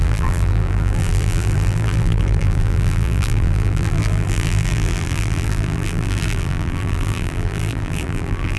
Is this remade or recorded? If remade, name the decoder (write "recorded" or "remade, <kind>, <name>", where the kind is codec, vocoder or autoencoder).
remade, vocoder, BigVGAN v2